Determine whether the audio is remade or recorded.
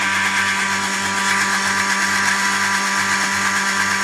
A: recorded